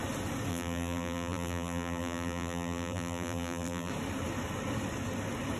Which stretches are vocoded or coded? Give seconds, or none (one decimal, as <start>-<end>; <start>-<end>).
0.5-3.9